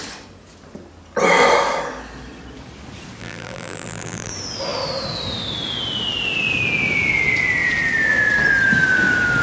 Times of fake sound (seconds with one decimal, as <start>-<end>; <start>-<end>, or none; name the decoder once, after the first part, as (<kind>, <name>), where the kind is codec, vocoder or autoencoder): 3.2-4.3 (vocoder, BigVGAN v2)